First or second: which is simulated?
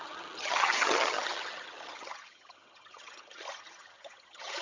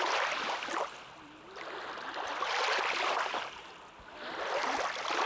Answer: first